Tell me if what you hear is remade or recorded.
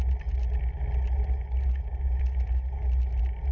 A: recorded